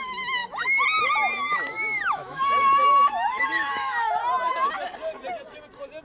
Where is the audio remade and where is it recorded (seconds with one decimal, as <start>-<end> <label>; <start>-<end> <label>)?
0.0-0.4 remade; 0.4-1.5 recorded; 1.5-4.2 remade; 4.2-6.0 recorded